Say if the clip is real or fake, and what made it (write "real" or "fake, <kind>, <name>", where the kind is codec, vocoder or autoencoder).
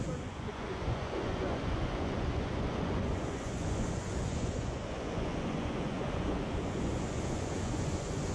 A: fake, vocoder, Vocos